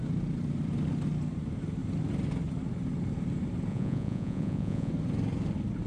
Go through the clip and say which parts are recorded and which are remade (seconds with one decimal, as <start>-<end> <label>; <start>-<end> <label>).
0.0-3.7 recorded; 3.7-4.9 remade; 4.9-5.9 recorded